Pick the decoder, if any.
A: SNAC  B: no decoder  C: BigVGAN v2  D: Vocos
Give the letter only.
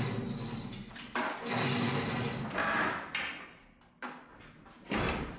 B